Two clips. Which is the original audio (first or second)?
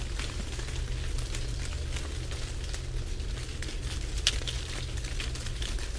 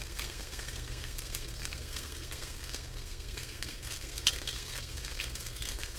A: first